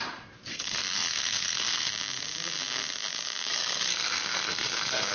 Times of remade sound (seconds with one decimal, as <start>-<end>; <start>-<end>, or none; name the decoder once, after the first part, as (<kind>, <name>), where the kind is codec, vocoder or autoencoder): 0.5-1.9 (codec, SNAC); 3.5-5.1